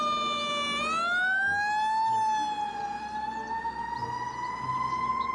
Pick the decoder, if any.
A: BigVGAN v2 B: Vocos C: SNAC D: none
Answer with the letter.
D